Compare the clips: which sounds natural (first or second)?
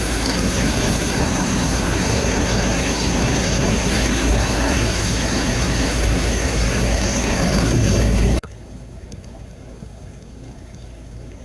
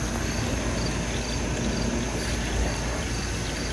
second